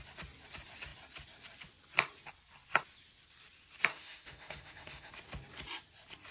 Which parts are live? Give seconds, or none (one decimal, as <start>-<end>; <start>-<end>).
0.0-3.9; 5.1-6.3